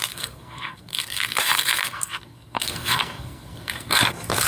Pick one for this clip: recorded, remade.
remade